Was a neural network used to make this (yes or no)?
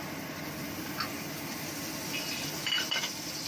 no